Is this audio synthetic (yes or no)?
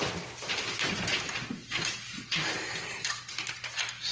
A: no